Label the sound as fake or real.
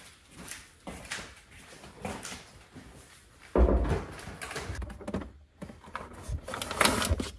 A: real